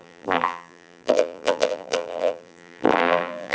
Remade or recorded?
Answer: remade